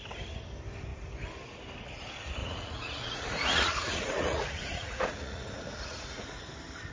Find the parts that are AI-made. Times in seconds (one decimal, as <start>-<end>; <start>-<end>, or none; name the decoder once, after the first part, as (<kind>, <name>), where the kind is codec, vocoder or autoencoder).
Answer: 2.4-6.5 (vocoder, Vocos)